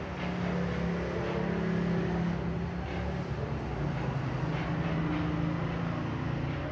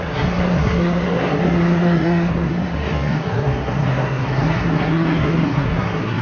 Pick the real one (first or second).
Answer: first